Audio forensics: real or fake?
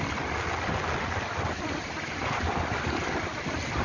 real